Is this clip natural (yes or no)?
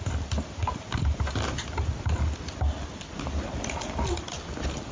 yes